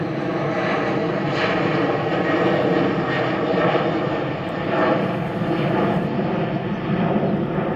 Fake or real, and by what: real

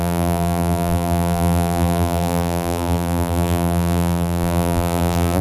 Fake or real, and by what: fake, vocoder, BigVGAN v2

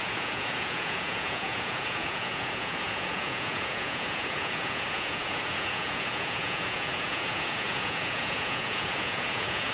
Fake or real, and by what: fake, vocoder, Vocos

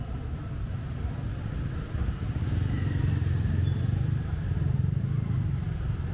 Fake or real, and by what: real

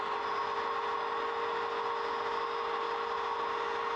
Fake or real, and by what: real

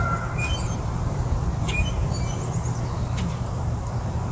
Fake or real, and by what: fake, vocoder, BigVGAN v2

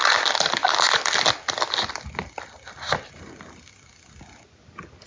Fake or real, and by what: real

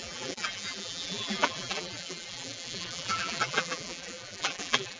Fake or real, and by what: fake, vocoder, BigVGAN v2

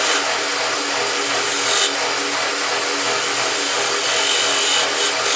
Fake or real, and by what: real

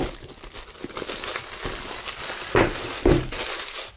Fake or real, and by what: real